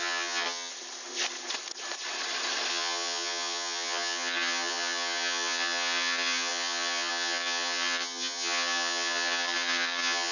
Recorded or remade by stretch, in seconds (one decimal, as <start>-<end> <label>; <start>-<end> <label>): 0.0-0.7 remade; 0.7-2.7 recorded; 2.7-10.3 remade